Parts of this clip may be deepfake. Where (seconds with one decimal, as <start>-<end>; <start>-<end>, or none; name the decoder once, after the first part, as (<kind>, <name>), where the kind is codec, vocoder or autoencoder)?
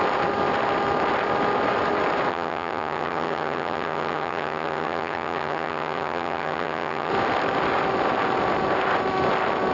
2.3-7.1 (vocoder, HiFi-GAN)